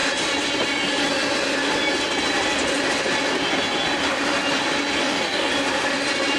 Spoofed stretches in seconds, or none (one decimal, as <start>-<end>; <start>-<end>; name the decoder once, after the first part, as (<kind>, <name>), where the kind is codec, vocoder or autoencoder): 5.0-5.5 (codec, DAC)